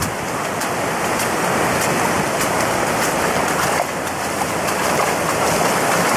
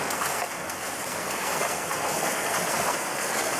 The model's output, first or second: second